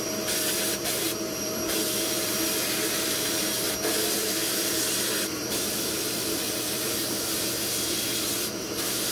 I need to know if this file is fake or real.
fake